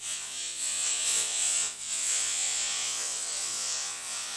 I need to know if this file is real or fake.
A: fake